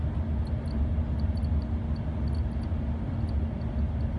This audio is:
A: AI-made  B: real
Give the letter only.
B